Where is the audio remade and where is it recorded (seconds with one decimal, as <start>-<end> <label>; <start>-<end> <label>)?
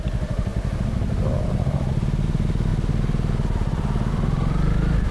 0.0-5.1 recorded